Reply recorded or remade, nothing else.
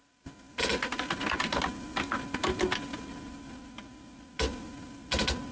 recorded